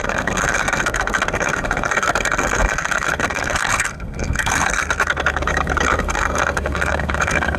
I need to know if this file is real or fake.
fake